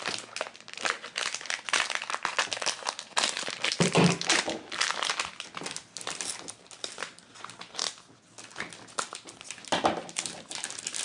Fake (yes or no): no